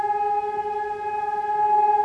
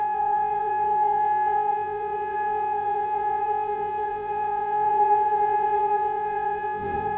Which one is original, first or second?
first